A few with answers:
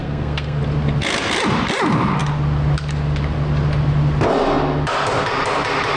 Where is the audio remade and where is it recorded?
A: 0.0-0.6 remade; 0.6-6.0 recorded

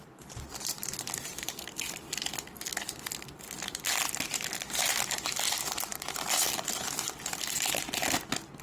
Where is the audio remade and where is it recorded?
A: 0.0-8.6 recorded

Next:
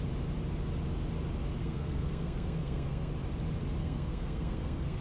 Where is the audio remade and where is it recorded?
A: 0.0-1.6 recorded; 1.6-3.1 remade; 3.1-3.8 recorded; 3.8-5.0 remade

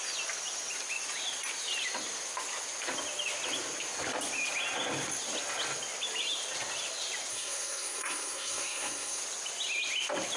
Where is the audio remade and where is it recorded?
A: 0.0-7.3 recorded; 7.3-9.2 remade; 9.2-10.4 recorded

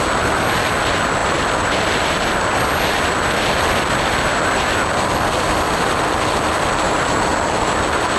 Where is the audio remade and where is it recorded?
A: 0.0-8.2 recorded

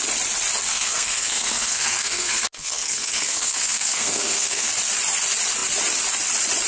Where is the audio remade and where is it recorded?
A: 0.0-0.7 recorded; 0.7-4.7 remade; 4.7-6.7 recorded

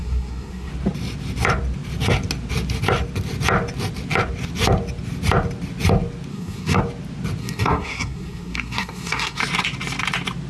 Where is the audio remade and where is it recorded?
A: 0.0-0.7 remade; 0.7-6.3 recorded; 6.3-6.8 remade; 6.8-7.4 recorded; 7.4-9.4 remade; 9.4-10.5 recorded

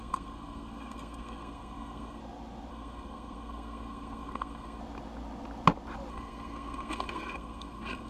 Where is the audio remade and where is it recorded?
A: 0.0-2.2 remade; 2.2-2.7 recorded; 2.7-4.8 remade; 4.8-6.1 recorded; 6.1-8.1 remade